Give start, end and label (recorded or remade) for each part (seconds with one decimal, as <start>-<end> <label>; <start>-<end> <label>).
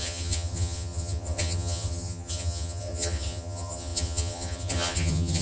0.0-5.4 remade